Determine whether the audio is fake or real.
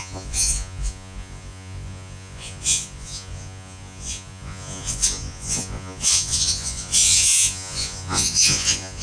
fake